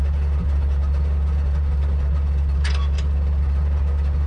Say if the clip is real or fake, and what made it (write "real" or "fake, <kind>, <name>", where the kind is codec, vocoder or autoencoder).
real